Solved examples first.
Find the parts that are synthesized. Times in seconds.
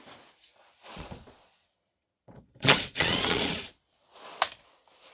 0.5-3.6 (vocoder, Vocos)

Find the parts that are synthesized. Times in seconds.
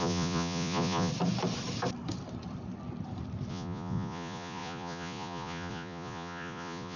0.0-1.1 (vocoder, Vocos); 3.5-7.0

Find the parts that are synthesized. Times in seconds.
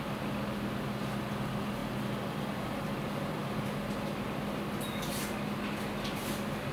none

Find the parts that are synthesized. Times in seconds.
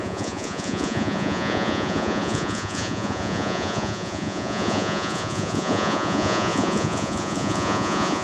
0.0-8.2 (vocoder, Vocos)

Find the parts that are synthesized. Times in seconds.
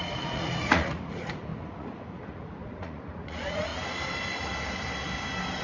0.0-3.7 (vocoder, Vocos)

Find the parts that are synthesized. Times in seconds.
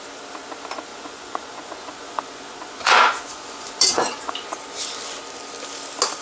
0.9-4.3 (vocoder, Vocos)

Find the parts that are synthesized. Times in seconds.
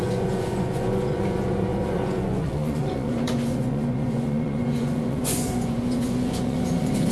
0.0-7.1 (vocoder, Vocos)